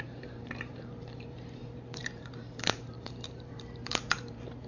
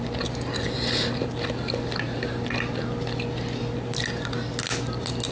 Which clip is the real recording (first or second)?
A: second